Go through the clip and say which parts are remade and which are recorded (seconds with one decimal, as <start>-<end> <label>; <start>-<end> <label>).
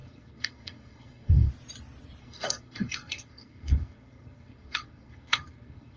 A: 0.0-1.5 remade; 1.5-2.2 recorded; 2.2-6.0 remade